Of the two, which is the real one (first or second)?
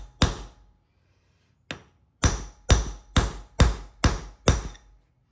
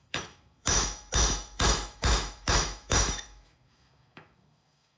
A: first